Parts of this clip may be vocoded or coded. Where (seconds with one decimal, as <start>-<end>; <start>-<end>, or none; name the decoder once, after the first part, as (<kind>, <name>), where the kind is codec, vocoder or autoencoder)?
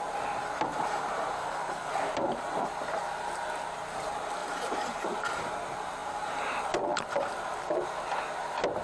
0.7-2.7 (vocoder, BigVGAN v2); 4.4-5.5; 6.0-6.5